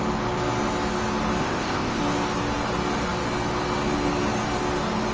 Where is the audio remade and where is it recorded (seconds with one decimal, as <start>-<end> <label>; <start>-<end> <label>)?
0.0-1.4 recorded; 1.4-2.0 remade; 2.0-5.1 recorded